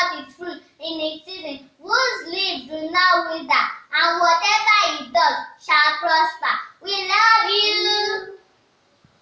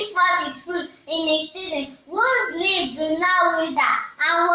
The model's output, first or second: second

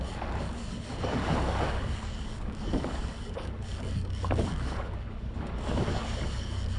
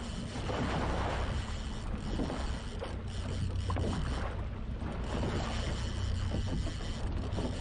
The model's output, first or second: first